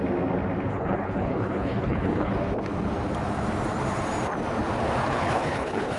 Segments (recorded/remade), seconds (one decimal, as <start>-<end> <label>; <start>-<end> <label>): 0.0-0.7 recorded; 0.7-2.3 remade; 2.3-5.0 recorded; 5.0-6.0 remade